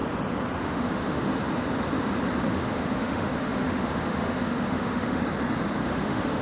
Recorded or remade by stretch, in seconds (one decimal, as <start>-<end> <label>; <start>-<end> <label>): 0.0-0.6 recorded; 0.6-1.3 remade; 1.3-2.5 recorded; 2.5-5.2 remade; 5.2-5.8 recorded; 5.8-6.4 remade